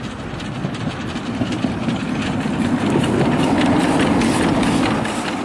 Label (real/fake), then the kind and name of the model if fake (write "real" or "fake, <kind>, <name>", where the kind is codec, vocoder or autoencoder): real